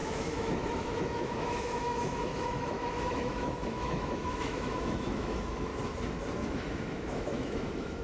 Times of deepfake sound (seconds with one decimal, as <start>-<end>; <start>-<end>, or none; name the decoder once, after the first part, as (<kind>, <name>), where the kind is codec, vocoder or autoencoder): 0.0-5.7 (autoencoder, DAC-VAE); 6.4-8.0